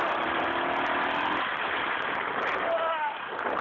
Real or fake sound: fake